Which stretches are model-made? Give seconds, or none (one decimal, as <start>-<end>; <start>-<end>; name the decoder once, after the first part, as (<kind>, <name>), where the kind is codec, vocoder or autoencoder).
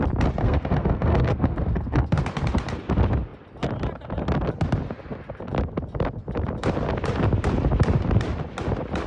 0.4-2.2 (codec, SNAC)